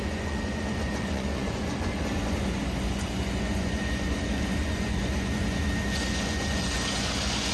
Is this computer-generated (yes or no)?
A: yes